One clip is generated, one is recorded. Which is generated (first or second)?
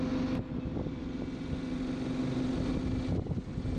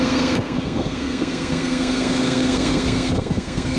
second